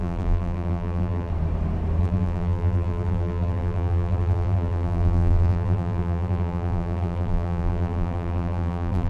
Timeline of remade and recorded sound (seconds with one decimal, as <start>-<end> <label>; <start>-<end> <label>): 0.0-1.3 remade; 1.3-2.0 recorded; 2.0-9.1 remade